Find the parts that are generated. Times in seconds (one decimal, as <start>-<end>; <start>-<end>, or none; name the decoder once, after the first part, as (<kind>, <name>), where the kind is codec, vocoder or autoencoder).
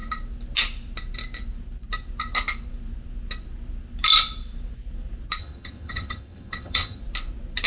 5.4-7.0 (vocoder, HiFi-GAN)